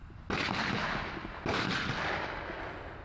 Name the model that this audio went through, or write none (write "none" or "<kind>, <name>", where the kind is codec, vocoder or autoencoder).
none